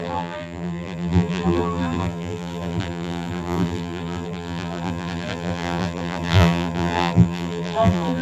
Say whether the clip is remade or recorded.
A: remade